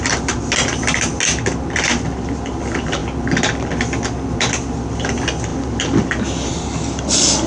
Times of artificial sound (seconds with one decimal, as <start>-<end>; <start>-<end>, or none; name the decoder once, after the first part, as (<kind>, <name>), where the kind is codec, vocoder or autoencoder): none